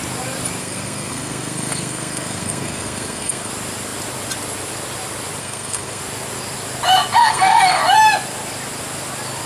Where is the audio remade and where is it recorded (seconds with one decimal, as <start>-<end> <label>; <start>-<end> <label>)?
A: 0.0-0.6 recorded; 0.6-3.5 remade; 3.5-5.4 recorded; 5.4-6.0 remade; 6.0-7.2 recorded; 7.2-7.8 remade; 7.8-9.5 recorded